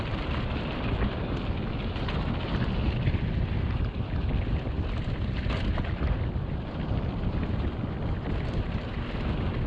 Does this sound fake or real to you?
real